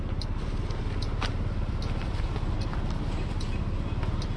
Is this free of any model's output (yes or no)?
yes